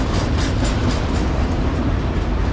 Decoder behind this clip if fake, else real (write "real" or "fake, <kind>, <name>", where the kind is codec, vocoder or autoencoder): real